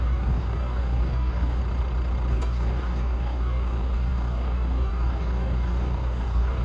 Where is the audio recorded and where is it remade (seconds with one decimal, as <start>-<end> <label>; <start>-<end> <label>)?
0.0-1.6 remade; 1.6-2.3 recorded; 2.3-6.6 remade